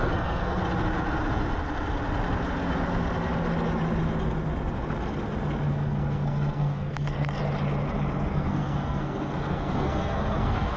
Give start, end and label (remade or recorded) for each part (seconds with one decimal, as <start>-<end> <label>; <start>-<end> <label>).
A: 0.0-0.6 remade; 0.6-5.7 recorded; 5.7-7.4 remade; 7.4-8.3 recorded; 8.3-10.8 remade